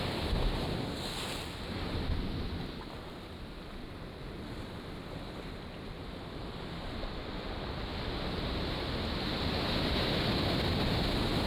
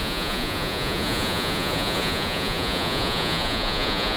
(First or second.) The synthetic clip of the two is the second